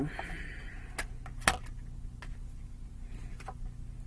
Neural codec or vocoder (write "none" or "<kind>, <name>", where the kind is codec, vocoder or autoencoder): none